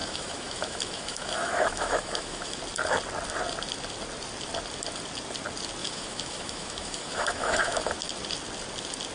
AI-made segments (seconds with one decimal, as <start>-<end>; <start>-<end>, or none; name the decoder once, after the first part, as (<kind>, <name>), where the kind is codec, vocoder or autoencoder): 0.0-2.6 (autoencoder, DAC-VAE); 5.8-7.9